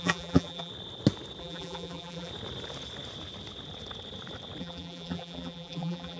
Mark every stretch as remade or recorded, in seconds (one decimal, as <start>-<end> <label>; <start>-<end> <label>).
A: 0.0-0.7 remade; 0.7-1.4 recorded; 1.4-2.3 remade; 2.3-4.6 recorded; 4.6-6.2 remade